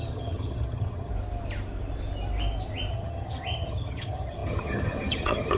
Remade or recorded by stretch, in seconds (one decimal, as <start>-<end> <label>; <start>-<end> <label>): 0.0-1.1 remade; 1.1-2.9 recorded; 2.9-5.6 remade